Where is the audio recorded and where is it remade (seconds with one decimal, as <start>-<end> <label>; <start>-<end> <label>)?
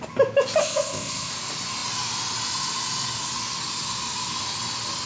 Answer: 0.0-0.6 recorded; 0.6-1.3 remade; 1.3-5.1 recorded